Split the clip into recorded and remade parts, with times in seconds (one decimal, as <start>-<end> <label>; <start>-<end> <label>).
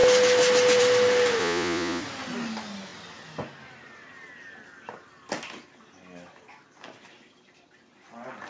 0.0-1.4 recorded; 1.4-2.0 remade; 2.0-8.5 recorded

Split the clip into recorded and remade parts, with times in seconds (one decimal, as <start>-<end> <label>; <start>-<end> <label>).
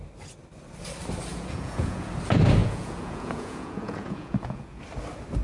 0.0-1.3 recorded; 1.3-2.1 remade; 2.1-2.6 recorded; 2.6-4.8 remade; 4.8-5.4 recorded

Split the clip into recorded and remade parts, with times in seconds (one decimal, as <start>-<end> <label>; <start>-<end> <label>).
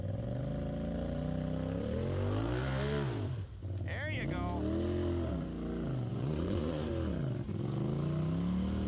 0.0-6.1 recorded; 6.1-6.9 remade; 6.9-8.9 recorded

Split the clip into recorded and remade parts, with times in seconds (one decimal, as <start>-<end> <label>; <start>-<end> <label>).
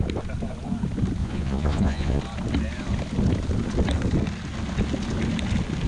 0.0-1.2 recorded; 1.2-2.2 remade; 2.2-5.9 recorded